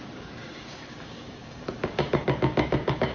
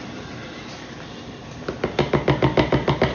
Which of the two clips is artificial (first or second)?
first